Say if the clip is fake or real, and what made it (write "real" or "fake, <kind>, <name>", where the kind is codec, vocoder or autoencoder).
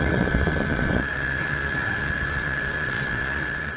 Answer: fake, vocoder, WaveNeXt